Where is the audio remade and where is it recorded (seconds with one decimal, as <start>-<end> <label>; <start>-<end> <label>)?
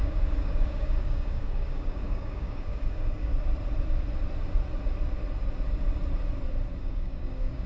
0.0-3.3 remade; 3.3-6.8 recorded; 6.8-7.7 remade